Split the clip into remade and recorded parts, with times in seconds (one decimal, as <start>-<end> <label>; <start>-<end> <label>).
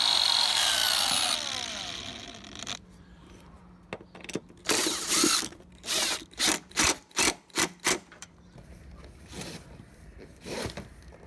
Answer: 0.0-0.8 remade; 0.8-2.6 recorded; 2.6-3.6 remade; 3.6-4.4 recorded; 4.4-11.3 remade